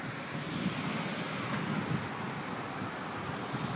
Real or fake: real